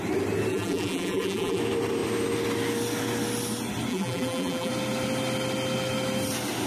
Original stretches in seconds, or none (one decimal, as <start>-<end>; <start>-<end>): 0.0-0.5; 1.6-3.9; 4.7-6.7